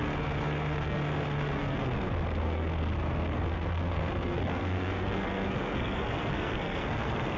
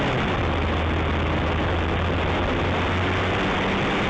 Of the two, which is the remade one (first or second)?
first